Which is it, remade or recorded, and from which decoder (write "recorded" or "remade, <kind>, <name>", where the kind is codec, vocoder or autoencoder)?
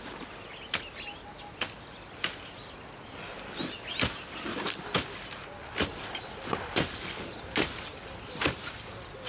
recorded